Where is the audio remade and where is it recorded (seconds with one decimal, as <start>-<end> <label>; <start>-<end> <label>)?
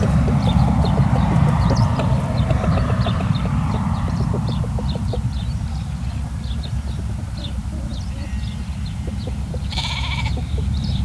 0.0-11.0 remade